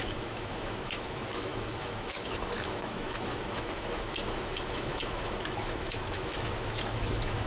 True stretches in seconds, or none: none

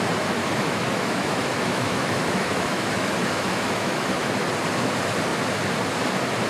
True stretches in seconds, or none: 0.0-0.4; 4.3-6.5